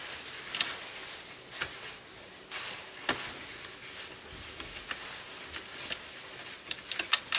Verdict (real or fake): real